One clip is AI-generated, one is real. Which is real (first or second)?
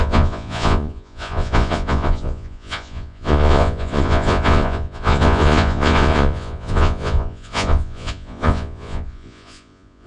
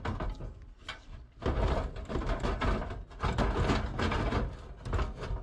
second